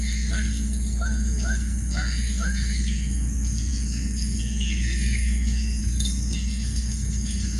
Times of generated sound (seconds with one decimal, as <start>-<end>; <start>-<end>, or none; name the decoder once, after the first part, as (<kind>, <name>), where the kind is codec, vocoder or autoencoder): 0.0-7.6 (codec, SNAC)